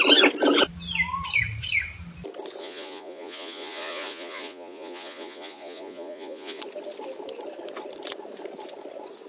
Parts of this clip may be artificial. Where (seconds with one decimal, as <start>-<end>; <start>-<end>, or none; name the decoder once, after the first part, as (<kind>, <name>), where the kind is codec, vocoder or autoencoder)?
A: 2.6-6.6 (vocoder, Vocos)